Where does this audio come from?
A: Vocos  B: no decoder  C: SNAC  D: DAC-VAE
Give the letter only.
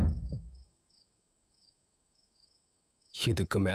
D